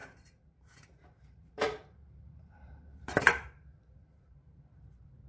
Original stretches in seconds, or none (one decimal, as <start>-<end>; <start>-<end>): none